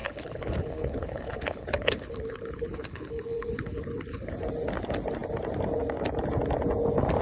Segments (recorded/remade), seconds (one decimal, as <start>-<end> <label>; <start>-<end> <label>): 0.0-4.3 remade; 4.3-7.2 recorded